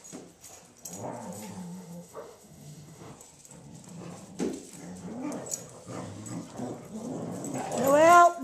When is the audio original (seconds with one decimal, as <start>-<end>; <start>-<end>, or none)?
0.0-1.6; 3.1-8.4